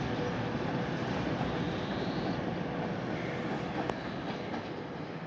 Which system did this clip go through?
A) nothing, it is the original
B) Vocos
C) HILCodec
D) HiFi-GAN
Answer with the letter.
A